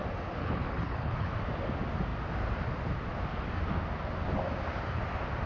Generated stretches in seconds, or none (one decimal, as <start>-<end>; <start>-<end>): 0.4-1.3